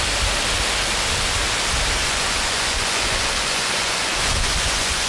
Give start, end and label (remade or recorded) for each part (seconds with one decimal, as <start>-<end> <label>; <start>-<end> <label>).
0.0-2.0 recorded; 2.0-5.1 remade